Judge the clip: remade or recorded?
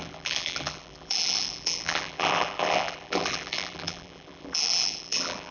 remade